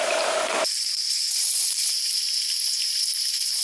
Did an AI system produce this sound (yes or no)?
yes